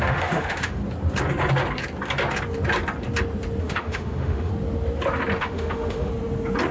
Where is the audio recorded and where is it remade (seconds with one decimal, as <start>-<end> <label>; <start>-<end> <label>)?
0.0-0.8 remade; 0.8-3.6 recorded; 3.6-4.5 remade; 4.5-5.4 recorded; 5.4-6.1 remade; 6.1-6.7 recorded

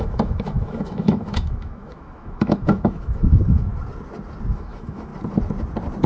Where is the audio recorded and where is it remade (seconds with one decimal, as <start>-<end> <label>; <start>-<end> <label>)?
0.0-3.7 remade; 3.7-4.5 recorded; 4.5-5.1 remade; 5.1-6.1 recorded

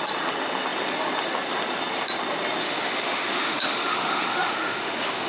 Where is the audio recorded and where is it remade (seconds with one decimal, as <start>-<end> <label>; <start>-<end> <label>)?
0.0-2.6 recorded; 2.6-5.3 remade

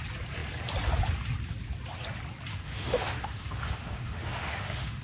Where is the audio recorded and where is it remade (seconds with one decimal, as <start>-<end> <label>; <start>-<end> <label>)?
0.0-2.5 recorded; 2.5-5.0 remade

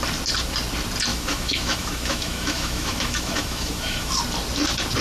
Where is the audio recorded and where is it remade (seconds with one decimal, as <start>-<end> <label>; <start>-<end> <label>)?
0.0-1.1 recorded; 1.1-4.1 remade; 4.1-5.0 recorded